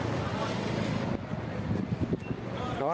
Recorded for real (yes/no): yes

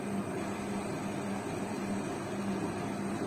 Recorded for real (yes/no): yes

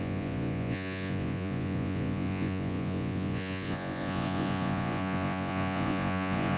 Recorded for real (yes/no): no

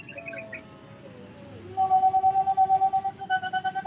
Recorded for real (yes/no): yes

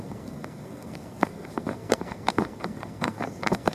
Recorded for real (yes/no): no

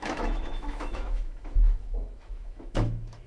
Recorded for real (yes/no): no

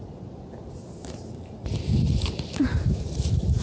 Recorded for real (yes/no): no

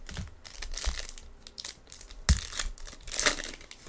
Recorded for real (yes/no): yes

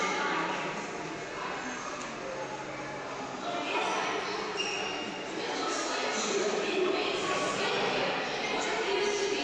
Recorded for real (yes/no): yes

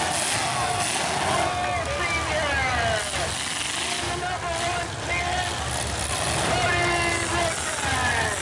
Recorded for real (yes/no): yes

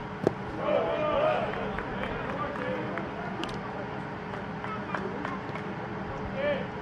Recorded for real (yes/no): yes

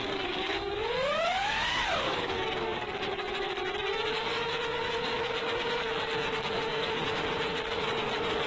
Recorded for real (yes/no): no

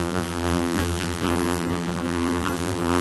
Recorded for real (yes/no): no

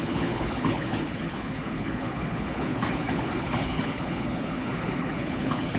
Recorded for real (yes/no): no